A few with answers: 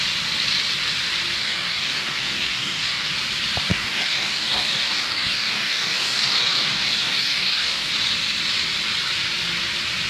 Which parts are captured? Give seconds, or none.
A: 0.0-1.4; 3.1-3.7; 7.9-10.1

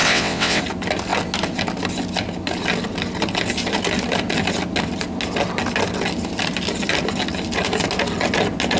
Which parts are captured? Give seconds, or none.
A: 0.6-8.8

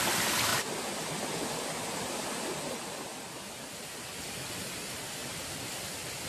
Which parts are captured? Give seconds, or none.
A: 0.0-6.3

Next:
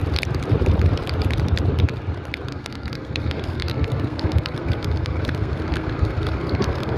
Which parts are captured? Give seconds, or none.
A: 0.0-2.5

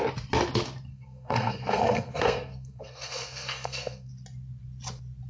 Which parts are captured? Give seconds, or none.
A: 0.0-0.9; 4.1-5.3

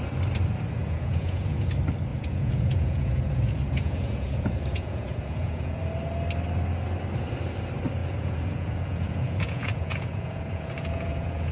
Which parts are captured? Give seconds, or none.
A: 0.0-0.8; 1.7-2.1; 5.8-8.0

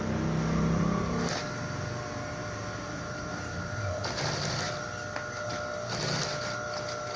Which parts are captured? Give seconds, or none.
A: 0.0-2.4; 4.0-7.2